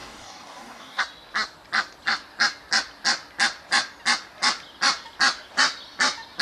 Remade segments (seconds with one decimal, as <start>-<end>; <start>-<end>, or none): 0.0-1.0

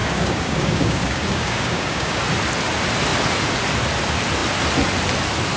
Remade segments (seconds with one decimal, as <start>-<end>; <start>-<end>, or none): 0.0-2.2

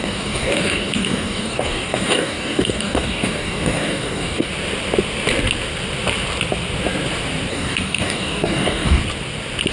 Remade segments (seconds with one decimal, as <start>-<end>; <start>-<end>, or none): 0.0-4.5; 7.5-9.0

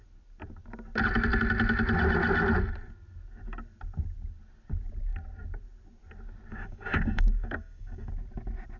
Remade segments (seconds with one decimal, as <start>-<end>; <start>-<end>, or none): 6.5-8.1

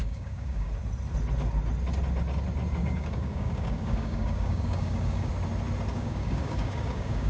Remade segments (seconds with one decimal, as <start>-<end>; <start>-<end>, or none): 0.0-0.7; 2.8-5.3; 5.9-7.3

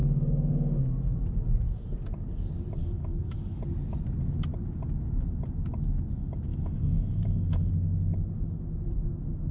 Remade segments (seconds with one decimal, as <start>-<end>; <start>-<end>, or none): 0.0-0.8; 2.8-3.6; 6.5-7.7

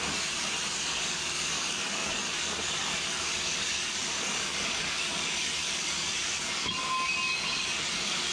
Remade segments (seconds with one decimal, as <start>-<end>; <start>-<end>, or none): 0.0-8.3